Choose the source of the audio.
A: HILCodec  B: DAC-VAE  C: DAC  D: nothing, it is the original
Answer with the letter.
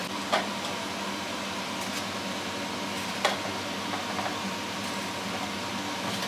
D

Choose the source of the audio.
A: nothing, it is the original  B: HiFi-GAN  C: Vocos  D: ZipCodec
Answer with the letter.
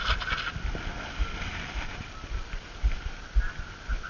A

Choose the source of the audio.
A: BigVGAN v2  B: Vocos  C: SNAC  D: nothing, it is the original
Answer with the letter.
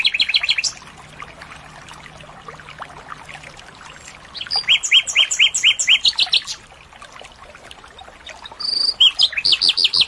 D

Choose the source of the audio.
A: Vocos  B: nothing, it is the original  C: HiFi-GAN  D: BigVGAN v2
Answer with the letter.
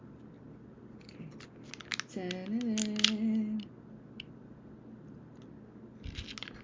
B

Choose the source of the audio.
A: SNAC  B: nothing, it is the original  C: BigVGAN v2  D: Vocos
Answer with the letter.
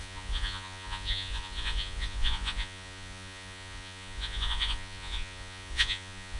D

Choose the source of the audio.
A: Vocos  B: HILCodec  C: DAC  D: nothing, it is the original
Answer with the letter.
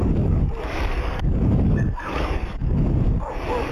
C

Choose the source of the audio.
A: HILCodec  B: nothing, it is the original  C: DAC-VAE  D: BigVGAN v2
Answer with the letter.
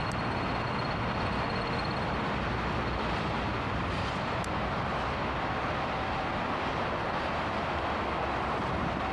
B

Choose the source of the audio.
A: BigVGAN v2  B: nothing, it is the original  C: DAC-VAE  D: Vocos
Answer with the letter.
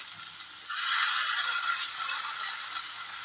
B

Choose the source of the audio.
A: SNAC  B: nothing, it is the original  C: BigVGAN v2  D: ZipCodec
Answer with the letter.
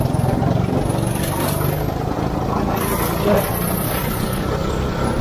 B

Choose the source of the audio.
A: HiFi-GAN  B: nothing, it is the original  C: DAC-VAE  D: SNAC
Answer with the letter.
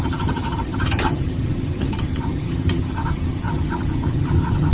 A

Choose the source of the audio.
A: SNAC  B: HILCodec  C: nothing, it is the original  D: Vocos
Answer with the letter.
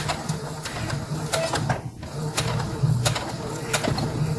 C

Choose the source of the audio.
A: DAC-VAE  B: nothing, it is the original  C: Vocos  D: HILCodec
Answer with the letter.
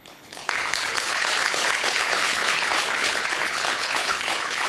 D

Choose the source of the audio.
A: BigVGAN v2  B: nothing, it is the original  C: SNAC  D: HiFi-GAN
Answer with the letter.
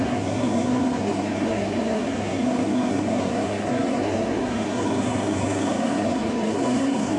C